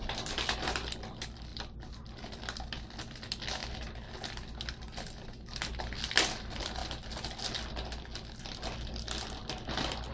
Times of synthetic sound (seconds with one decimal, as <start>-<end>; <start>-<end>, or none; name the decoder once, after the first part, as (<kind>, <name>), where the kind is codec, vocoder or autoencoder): none